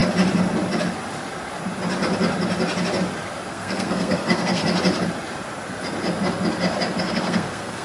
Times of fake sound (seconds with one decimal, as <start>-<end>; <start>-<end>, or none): 3.5-4.6; 7.0-7.8